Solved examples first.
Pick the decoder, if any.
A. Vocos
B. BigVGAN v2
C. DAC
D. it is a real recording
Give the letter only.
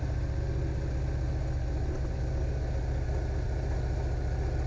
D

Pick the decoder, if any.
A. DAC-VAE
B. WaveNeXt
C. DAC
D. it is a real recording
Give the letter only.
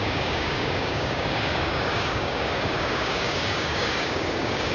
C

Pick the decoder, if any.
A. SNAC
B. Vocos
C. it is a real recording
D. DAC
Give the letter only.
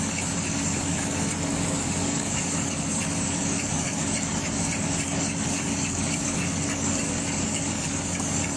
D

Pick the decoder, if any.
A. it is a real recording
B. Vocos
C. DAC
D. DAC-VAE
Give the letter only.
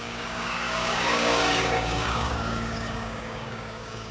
C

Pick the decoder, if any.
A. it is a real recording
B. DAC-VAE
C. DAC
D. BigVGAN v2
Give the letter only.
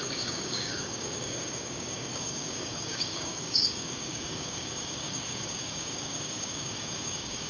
C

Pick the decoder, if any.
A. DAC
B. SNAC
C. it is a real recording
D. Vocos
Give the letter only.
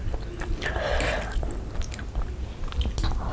C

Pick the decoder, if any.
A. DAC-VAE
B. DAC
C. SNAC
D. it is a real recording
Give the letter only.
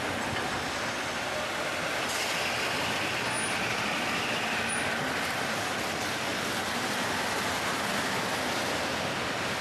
D